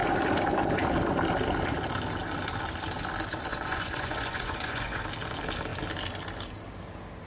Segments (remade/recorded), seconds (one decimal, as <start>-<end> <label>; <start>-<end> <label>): 0.0-3.5 recorded; 3.5-5.0 remade; 5.0-7.3 recorded